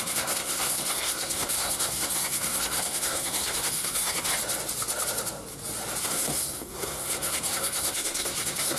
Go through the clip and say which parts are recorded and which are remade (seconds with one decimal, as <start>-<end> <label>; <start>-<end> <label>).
0.0-4.3 remade; 4.3-6.0 recorded; 6.0-8.8 remade